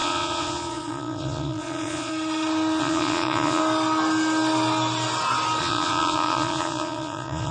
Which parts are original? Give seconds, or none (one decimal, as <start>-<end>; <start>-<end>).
2.1-2.8; 3.6-5.6